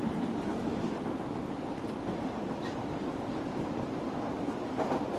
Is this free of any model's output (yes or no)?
yes